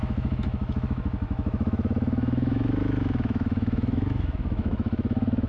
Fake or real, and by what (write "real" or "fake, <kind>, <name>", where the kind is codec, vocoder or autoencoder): fake, autoencoder, DAC-VAE